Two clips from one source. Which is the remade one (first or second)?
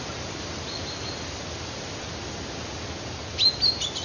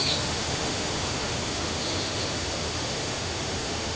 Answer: second